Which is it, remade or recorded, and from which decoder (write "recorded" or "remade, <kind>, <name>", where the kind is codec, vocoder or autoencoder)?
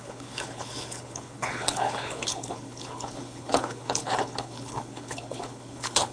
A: remade, codec, HILCodec